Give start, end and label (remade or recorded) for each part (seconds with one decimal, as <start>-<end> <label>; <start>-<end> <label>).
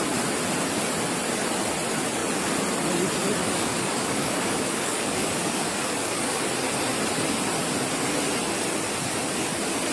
0.0-3.4 recorded; 3.4-6.4 remade; 6.4-9.9 recorded